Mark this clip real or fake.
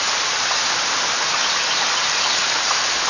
real